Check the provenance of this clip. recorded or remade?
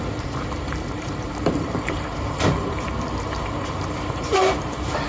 remade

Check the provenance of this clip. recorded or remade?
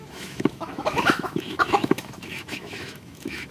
remade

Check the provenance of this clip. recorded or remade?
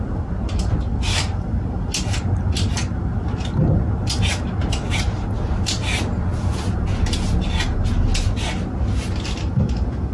recorded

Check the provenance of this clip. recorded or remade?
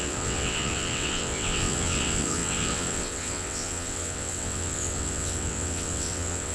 remade